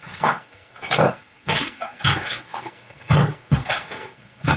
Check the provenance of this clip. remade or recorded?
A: remade